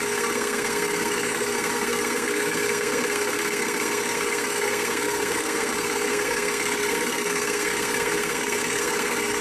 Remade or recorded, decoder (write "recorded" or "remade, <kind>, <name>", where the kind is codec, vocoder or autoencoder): remade, codec, SNAC